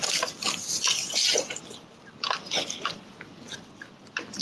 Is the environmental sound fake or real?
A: real